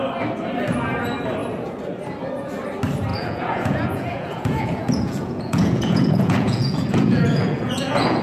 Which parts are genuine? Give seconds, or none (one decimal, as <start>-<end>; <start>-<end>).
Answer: 0.0-3.1